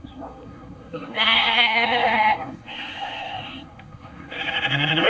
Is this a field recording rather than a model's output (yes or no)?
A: no